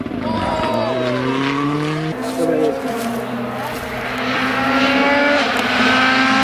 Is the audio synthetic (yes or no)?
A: no